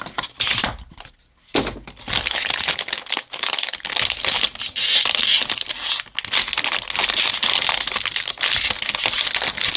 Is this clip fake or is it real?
real